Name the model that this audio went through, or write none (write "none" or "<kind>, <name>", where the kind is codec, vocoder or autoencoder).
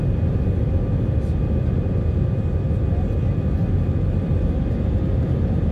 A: none